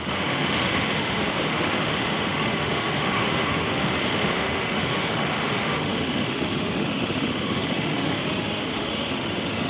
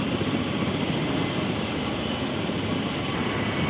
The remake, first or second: first